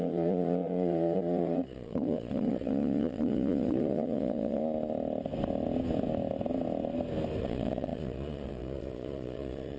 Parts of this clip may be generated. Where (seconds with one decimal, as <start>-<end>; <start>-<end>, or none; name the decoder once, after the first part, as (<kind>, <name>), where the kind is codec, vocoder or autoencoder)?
0.0-4.6 (vocoder, Vocos); 7.4-9.8